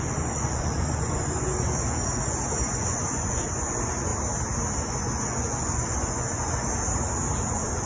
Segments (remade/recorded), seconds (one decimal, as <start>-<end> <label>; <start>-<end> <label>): 0.0-4.1 remade; 4.1-4.8 recorded; 4.8-6.7 remade; 6.7-7.5 recorded; 7.5-7.9 remade